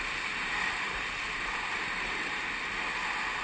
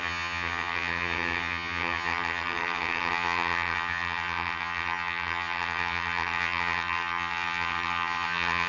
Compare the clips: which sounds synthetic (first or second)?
second